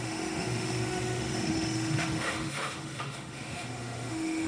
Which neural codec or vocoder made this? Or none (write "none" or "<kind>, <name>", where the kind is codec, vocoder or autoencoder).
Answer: autoencoder, DAC-VAE